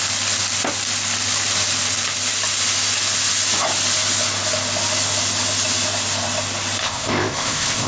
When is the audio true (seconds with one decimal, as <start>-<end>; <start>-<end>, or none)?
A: 0.0-6.8